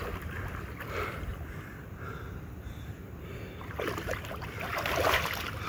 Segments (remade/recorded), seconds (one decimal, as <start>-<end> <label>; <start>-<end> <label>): 0.0-5.7 recorded